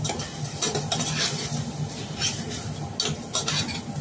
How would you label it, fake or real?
real